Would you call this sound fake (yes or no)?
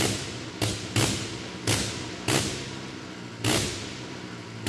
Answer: no